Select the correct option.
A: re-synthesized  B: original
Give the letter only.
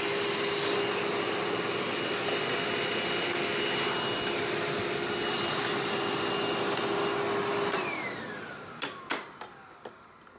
B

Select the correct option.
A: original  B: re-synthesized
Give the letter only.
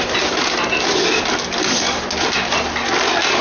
A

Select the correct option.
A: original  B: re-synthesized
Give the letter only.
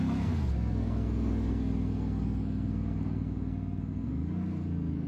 B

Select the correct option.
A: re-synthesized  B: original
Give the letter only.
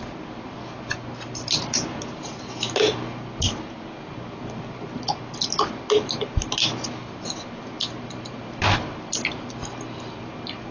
B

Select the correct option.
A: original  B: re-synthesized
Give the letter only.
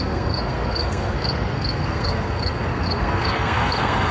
B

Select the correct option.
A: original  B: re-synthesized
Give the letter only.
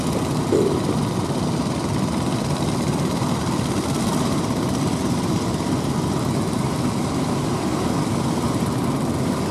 A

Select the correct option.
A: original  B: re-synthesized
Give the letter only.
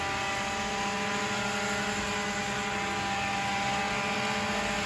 A